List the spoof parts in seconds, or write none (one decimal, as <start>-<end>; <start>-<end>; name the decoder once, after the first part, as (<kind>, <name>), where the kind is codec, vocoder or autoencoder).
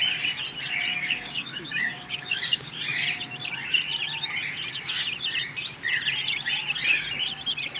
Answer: 0.9-2.8 (codec, DAC)